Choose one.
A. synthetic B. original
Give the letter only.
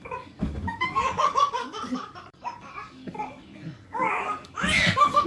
A